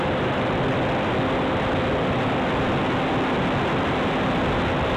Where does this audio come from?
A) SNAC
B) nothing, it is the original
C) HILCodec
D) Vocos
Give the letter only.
B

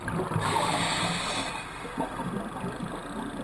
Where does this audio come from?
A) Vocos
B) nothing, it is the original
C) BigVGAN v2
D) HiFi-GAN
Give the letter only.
B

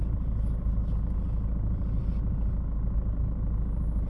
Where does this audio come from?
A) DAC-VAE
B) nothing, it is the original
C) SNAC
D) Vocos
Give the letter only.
B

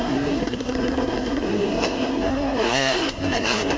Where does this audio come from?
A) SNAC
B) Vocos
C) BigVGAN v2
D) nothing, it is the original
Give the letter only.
A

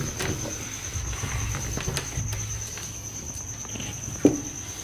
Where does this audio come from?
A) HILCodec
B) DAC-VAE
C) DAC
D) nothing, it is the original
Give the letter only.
D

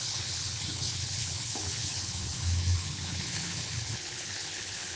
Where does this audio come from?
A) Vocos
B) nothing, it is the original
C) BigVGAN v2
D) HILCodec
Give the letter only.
D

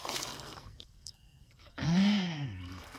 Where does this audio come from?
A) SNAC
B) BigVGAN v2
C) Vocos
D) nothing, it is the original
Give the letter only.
A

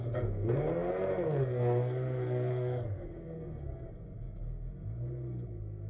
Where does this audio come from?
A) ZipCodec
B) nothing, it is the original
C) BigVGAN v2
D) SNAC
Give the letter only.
D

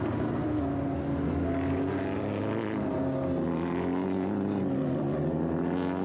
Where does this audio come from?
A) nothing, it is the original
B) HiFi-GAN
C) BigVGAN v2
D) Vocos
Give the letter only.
A